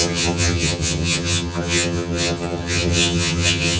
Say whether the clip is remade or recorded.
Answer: remade